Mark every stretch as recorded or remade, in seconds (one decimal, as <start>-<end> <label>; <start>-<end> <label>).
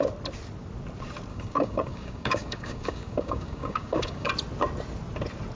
0.0-1.3 recorded; 1.3-4.3 remade; 4.3-5.6 recorded